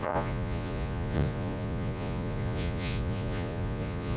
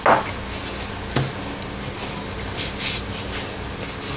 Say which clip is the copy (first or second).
first